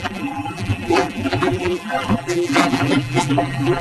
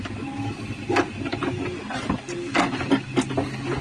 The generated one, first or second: first